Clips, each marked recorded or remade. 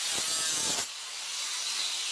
recorded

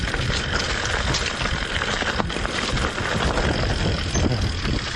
recorded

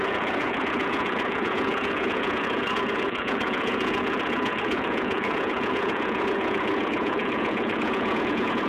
remade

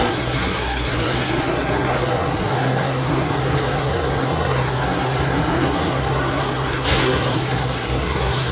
remade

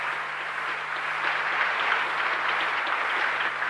recorded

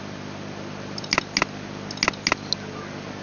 recorded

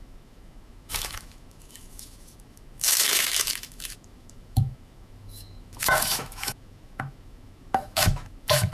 remade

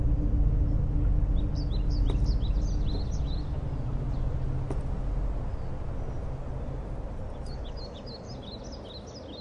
recorded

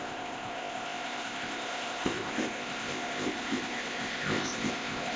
remade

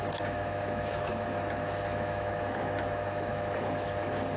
remade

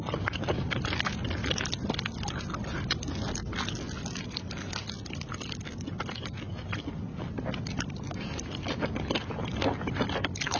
recorded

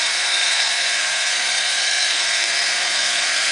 remade